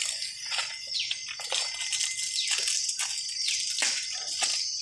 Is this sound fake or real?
real